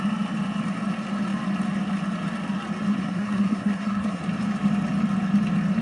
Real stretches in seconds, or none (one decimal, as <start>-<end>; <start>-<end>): 0.0-2.9; 4.2-5.8